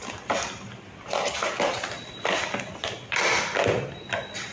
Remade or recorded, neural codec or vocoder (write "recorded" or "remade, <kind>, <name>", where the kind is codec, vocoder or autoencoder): recorded